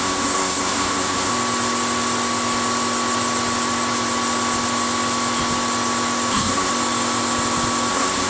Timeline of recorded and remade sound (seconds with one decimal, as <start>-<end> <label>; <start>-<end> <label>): 0.0-1.3 remade; 1.3-6.3 recorded; 6.3-6.7 remade; 6.7-7.9 recorded; 7.9-8.3 remade